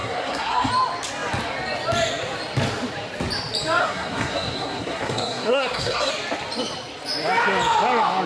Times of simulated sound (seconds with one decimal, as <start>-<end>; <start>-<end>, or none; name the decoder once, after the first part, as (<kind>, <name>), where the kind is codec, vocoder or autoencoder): 0.0-0.7 (codec, SNAC); 3.8-6.1